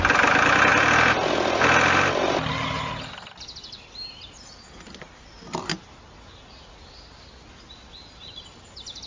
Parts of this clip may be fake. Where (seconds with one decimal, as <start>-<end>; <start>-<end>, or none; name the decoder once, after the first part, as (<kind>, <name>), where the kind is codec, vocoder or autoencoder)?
none